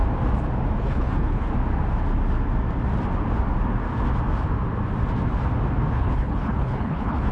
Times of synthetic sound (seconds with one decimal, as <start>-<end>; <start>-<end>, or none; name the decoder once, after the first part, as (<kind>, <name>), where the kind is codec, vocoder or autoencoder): 0.8-1.5 (codec, HILCodec); 5.9-7.3